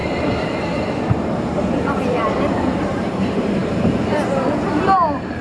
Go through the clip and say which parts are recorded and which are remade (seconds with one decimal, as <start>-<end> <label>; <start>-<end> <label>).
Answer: 0.0-5.4 remade